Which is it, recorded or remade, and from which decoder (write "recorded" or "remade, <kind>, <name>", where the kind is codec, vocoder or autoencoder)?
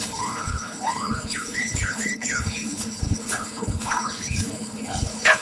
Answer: remade, codec, HILCodec